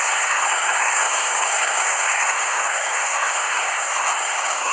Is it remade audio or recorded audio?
remade